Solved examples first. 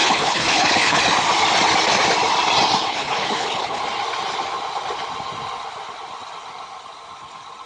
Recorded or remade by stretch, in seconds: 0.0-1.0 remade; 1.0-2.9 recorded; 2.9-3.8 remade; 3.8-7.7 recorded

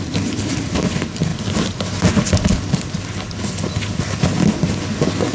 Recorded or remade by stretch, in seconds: 0.0-5.3 recorded

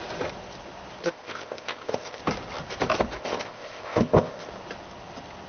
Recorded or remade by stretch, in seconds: 0.0-1.0 recorded; 1.0-2.2 remade; 2.2-3.2 recorded; 3.2-4.5 remade; 4.5-5.5 recorded

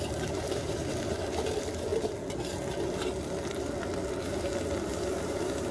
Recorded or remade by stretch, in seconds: 0.0-1.9 remade; 1.9-5.3 recorded; 5.3-5.7 remade